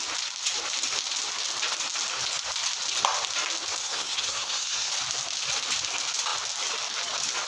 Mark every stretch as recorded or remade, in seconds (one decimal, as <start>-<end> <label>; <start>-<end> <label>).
0.0-3.8 recorded; 3.8-4.9 remade; 4.9-7.5 recorded